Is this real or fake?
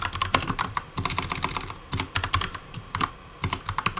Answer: real